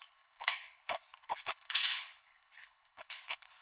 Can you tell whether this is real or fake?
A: fake